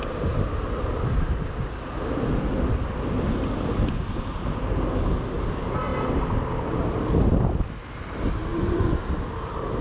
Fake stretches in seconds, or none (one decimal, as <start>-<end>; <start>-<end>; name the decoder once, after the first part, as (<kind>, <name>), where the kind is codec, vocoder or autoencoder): 8.5-9.0 (vocoder, Vocos)